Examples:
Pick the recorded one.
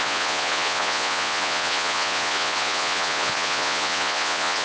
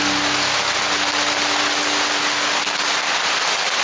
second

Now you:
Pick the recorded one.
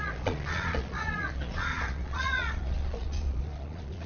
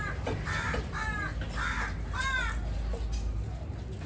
second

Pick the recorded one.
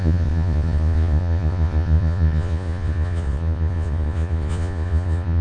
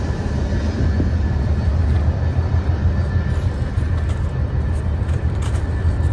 second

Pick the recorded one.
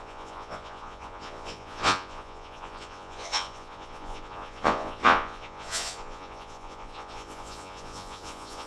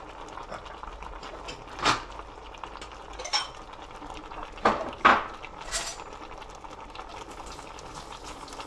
second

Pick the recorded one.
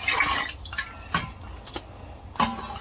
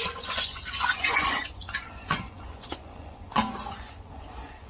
first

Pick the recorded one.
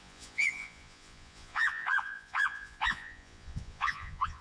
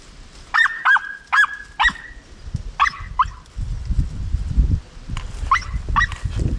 second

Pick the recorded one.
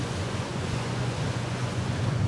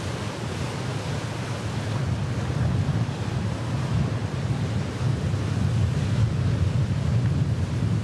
second